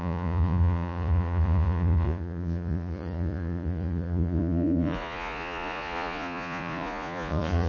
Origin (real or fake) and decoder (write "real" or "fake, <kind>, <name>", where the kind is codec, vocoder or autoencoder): fake, vocoder, Vocos